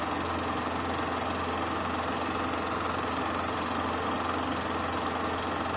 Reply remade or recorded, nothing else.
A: recorded